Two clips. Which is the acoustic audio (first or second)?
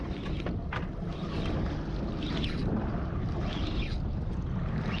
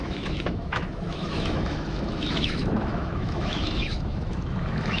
first